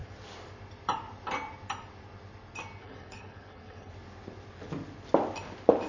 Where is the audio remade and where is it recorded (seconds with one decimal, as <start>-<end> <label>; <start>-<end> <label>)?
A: 0.0-2.8 recorded; 2.8-3.9 remade; 3.9-5.9 recorded